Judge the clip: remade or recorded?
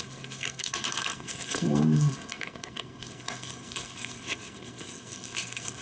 remade